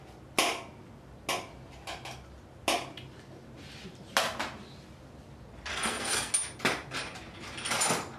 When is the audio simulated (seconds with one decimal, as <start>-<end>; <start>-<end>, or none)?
5.7-6.3